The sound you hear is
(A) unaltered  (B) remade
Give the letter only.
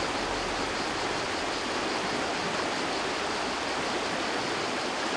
A